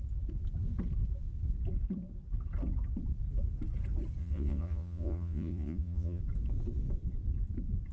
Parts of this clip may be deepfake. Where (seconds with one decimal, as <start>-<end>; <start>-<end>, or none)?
4.2-6.2